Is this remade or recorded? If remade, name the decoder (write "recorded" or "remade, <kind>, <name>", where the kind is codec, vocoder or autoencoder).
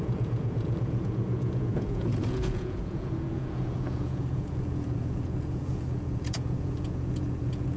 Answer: remade, vocoder, Vocos